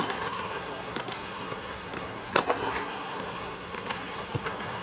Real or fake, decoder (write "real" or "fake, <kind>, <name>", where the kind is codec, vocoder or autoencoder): fake, codec, SNAC